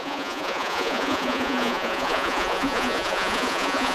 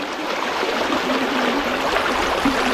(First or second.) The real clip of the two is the second